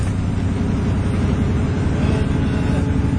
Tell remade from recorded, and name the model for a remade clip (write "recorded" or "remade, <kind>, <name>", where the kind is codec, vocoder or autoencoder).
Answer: recorded